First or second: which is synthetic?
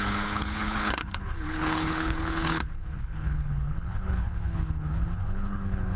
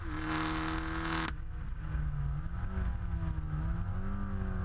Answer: first